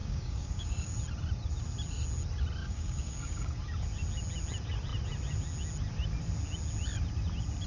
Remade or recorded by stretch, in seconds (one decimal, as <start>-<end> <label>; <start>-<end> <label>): 0.0-1.0 remade; 1.0-2.6 recorded; 2.6-3.6 remade; 3.6-7.7 recorded